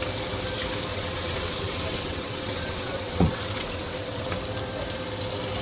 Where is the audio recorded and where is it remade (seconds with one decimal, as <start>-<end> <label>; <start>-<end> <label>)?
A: 0.0-0.9 recorded; 0.9-4.3 remade; 4.3-5.6 recorded